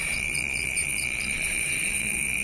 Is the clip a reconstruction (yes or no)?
yes